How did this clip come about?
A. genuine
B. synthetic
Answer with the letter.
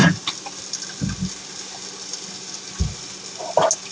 A